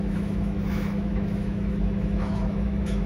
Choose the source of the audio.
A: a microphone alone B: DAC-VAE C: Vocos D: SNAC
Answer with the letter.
B